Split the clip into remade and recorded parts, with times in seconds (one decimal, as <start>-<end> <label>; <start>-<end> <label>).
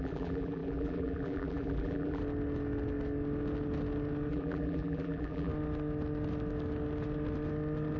0.0-2.2 remade; 2.2-4.3 recorded; 4.3-5.5 remade; 5.5-8.0 recorded